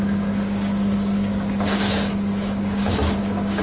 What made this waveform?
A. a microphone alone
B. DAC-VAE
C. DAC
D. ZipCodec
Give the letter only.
C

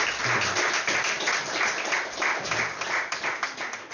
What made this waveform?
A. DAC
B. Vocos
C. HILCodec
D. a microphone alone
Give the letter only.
D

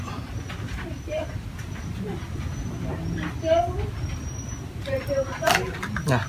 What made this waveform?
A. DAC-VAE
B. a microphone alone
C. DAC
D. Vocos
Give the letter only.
B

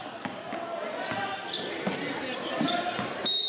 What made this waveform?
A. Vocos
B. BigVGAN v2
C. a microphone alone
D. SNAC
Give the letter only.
C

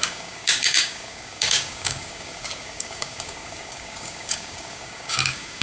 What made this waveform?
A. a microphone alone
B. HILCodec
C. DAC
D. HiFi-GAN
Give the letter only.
C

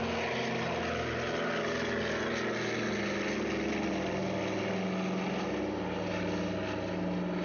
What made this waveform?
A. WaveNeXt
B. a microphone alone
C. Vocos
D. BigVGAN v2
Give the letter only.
B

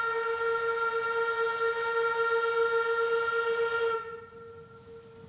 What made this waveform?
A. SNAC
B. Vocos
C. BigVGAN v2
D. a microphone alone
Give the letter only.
D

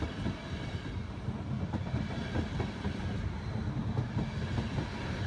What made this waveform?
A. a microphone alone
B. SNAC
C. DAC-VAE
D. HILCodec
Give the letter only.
A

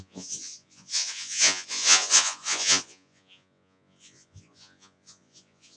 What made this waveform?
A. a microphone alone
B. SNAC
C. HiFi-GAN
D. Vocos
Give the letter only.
D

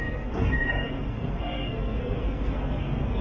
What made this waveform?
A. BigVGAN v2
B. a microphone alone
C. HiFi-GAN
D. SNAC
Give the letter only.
D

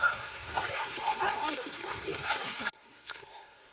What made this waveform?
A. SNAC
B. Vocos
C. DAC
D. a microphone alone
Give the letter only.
A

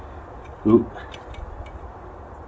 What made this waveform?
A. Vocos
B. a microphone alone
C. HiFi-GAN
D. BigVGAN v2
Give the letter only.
B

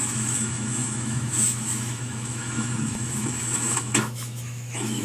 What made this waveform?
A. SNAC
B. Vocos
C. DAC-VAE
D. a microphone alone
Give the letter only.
C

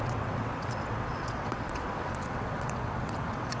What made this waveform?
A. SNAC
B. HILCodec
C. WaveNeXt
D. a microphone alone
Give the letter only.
C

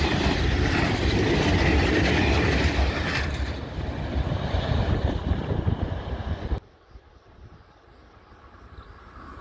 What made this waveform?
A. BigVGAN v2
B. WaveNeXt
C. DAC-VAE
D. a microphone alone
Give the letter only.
D